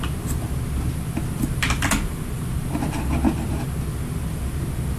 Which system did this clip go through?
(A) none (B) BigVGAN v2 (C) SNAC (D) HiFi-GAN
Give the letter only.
A